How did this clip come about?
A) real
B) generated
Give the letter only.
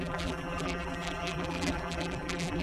B